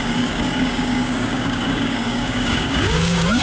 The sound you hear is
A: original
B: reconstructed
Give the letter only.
B